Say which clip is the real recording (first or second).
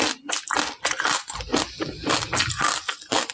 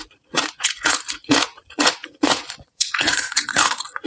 first